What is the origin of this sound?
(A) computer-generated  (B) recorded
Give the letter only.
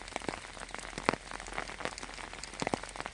B